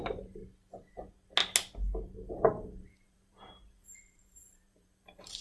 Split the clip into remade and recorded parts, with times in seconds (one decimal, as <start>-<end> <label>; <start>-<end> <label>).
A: 0.0-0.4 remade; 0.4-2.3 recorded; 2.3-5.4 remade

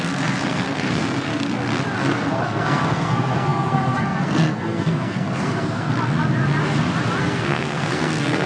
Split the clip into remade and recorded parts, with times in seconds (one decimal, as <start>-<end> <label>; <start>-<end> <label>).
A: 0.0-1.3 remade; 1.3-2.0 recorded; 2.0-5.9 remade; 5.9-7.2 recorded; 7.2-8.5 remade

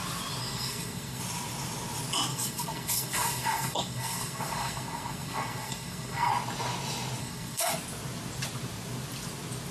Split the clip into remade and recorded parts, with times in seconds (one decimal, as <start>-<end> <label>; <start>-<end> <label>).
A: 0.0-0.4 recorded; 0.4-1.2 remade; 1.2-2.3 recorded; 2.3-6.3 remade; 6.3-7.2 recorded; 7.2-7.7 remade; 7.7-9.7 recorded

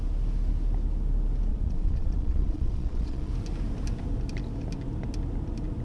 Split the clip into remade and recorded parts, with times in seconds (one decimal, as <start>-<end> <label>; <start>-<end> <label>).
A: 0.0-1.5 recorded; 1.5-3.3 remade; 3.3-5.8 recorded

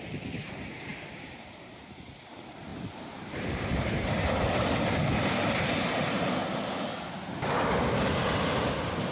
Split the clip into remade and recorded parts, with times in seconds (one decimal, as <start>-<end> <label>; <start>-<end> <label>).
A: 0.0-6.4 remade; 6.4-9.1 recorded

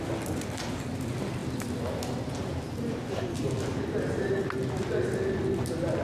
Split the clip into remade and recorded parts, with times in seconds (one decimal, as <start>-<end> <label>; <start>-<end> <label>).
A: 0.0-6.0 recorded